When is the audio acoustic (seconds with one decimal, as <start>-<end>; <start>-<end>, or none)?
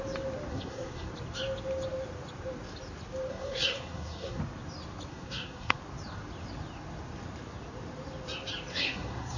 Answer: 0.0-0.5; 1.1-3.3; 4.4-5.1; 5.8-8.7